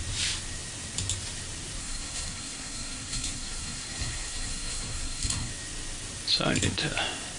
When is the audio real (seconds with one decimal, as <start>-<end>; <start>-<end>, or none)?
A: 0.0-1.8; 5.5-7.4